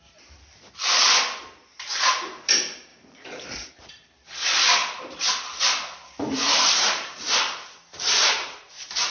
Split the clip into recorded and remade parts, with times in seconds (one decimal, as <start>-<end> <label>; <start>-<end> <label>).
0.0-1.9 recorded; 1.9-2.5 remade; 2.5-2.9 recorded; 2.9-3.9 remade; 3.9-6.3 recorded; 6.3-9.1 remade